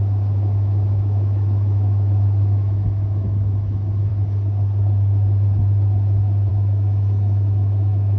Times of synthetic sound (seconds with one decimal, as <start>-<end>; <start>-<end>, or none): 0.0-4.1; 6.5-8.2